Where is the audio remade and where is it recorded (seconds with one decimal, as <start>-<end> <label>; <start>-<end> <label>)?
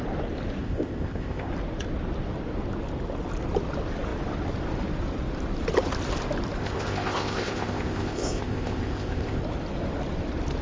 0.0-0.6 recorded; 0.6-1.5 remade; 1.5-6.6 recorded; 6.6-9.4 remade; 9.4-10.6 recorded